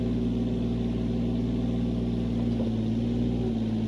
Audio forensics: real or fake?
real